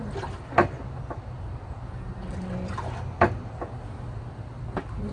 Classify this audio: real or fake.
real